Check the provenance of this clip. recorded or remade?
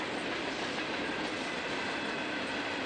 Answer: recorded